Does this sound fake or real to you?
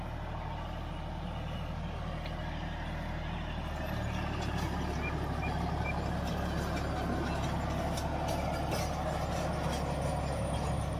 real